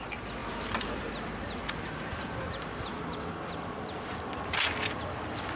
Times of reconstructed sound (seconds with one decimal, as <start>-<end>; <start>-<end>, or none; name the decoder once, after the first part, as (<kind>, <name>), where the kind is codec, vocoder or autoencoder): 0.0-2.9 (vocoder, BigVGAN v2)